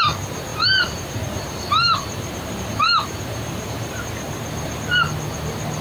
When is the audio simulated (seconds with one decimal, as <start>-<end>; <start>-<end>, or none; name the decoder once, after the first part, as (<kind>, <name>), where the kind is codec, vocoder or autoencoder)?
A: 0.5-4.0 (vocoder, BigVGAN v2)